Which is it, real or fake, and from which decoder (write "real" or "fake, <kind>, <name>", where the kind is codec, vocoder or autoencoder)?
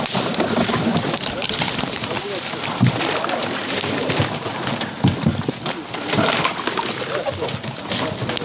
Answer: real